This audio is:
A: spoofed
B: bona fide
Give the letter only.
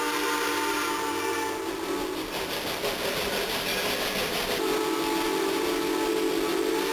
B